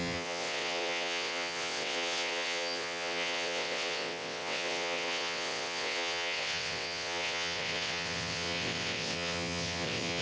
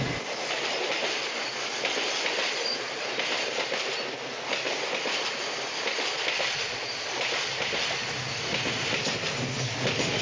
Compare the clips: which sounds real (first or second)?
second